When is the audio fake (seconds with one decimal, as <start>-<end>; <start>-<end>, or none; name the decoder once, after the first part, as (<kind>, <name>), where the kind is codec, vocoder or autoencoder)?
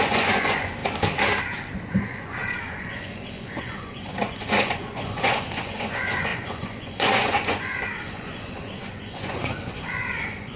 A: 0.0-0.8 (vocoder, Vocos); 1.4-10.6